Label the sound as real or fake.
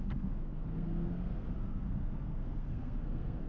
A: fake